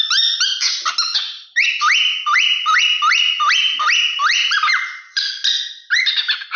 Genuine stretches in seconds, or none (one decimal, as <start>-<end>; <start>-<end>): 0.0-4.1; 5.3-6.6